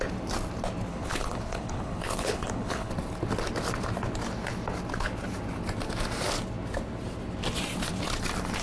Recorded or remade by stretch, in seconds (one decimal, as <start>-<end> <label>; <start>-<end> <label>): 0.0-0.9 recorded; 0.9-2.9 remade; 2.9-8.6 recorded